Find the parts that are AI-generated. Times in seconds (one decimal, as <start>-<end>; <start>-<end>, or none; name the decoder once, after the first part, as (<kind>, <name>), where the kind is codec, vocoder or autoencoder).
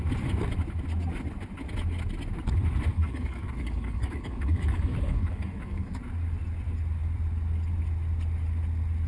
2.9-6.0 (codec, DAC)